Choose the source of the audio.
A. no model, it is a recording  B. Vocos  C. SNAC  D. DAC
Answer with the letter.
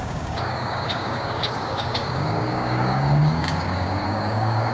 D